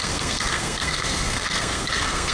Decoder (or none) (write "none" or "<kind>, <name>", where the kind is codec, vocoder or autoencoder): codec, SNAC